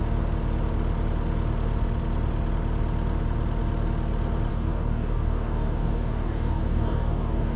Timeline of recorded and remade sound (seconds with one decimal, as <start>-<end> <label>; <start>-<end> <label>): 0.0-4.5 recorded; 4.5-7.6 remade